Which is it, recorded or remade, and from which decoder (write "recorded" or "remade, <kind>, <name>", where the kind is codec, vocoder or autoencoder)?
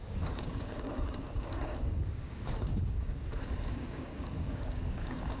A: remade, codec, DAC